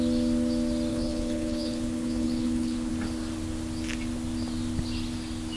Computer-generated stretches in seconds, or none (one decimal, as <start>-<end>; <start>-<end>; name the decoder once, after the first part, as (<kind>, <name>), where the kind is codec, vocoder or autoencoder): 0.9-2.9 (codec, HILCodec)